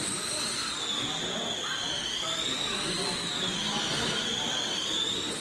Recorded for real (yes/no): yes